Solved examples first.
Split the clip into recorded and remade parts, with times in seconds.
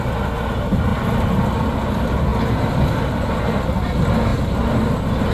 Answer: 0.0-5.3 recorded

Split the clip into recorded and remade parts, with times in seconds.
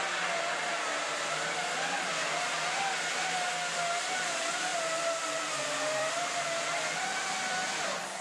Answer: 0.0-4.7 recorded; 4.7-7.5 remade; 7.5-8.2 recorded